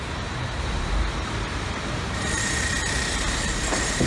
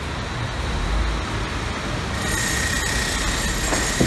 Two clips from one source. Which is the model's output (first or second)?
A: first